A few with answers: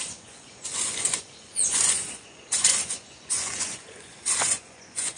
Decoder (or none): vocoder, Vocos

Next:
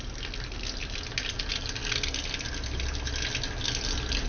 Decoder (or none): none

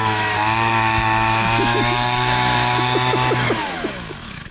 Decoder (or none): autoencoder, DAC-VAE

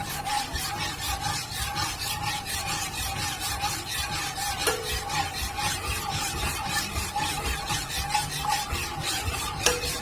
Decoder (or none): vocoder, BigVGAN v2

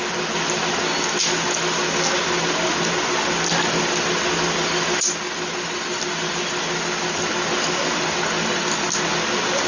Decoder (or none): none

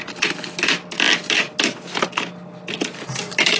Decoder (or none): none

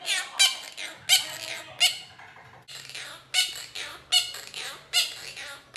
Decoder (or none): none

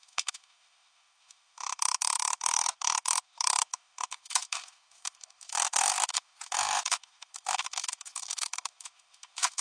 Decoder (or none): autoencoder, DAC-VAE